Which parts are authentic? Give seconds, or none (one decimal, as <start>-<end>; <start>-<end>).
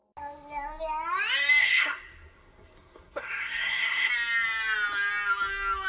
0.0-1.6; 4.1-5.9